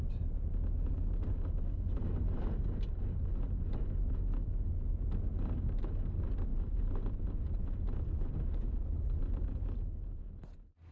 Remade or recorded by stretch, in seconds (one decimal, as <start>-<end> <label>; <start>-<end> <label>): 0.0-6.5 recorded; 6.5-9.8 remade; 9.8-10.9 recorded